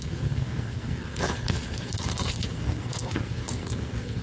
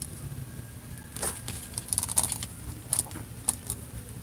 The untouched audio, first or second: second